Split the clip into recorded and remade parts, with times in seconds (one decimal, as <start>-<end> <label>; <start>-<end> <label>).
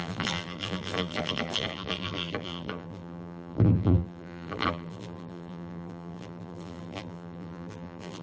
0.0-8.2 remade